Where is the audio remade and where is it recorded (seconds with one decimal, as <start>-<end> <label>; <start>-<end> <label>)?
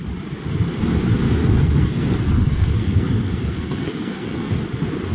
0.0-1.4 recorded; 1.4-4.5 remade; 4.5-5.1 recorded